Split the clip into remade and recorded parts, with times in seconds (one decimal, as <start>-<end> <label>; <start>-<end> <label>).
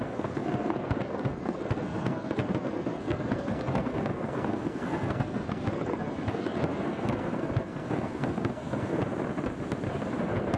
0.0-9.0 remade; 9.0-10.2 recorded; 10.2-10.6 remade